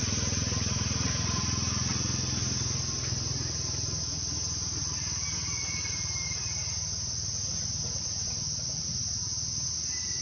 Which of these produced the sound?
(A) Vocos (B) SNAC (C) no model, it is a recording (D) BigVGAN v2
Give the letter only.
C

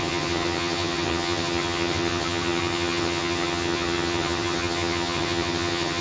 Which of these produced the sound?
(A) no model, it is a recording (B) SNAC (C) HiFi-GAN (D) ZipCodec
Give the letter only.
C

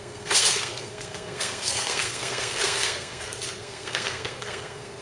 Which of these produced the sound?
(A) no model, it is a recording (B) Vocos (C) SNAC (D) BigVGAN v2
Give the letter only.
C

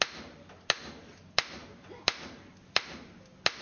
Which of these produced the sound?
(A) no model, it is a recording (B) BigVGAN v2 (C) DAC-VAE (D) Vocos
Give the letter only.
A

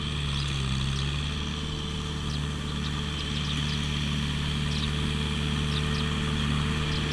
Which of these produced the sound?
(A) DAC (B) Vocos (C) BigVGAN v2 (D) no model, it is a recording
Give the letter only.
D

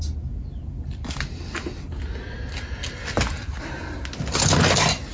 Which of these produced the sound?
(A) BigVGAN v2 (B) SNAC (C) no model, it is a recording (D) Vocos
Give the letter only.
C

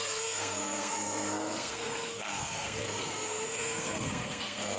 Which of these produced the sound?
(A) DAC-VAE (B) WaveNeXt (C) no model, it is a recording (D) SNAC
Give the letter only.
D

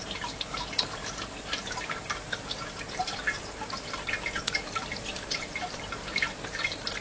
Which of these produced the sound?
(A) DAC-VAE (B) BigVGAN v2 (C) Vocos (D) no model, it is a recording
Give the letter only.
B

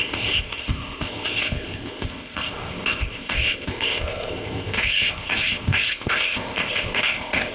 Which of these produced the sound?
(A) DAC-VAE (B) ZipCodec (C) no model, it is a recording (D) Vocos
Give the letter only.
B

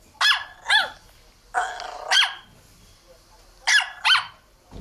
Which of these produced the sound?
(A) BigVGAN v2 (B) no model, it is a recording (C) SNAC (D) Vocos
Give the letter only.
B